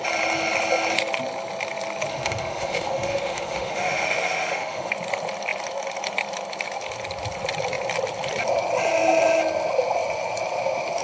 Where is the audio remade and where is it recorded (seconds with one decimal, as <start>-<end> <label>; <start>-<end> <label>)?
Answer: 0.0-2.1 recorded; 2.1-4.9 remade; 4.9-11.0 recorded